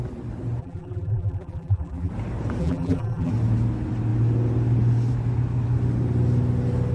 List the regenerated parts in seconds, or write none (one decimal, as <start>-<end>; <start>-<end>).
0.6-2.1; 2.6-3.3

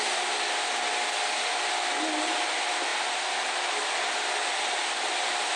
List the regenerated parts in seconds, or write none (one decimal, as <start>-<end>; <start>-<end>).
none

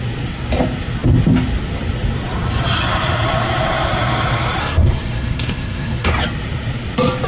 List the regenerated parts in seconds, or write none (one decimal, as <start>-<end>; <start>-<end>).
4.6-6.1